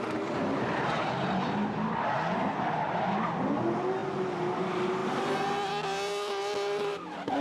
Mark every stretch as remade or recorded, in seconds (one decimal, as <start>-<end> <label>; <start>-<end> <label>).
0.0-7.4 recorded